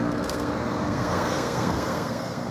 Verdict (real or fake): fake